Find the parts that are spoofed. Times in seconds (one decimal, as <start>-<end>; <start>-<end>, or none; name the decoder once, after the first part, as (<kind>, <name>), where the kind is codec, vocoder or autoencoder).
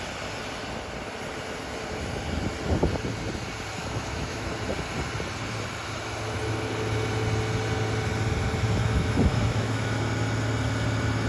3.8-4.5 (autoencoder, DAC-VAE); 8.8-10.0